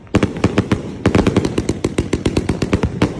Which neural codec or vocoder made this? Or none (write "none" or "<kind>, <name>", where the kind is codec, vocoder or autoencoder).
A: none